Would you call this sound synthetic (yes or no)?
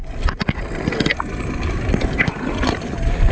no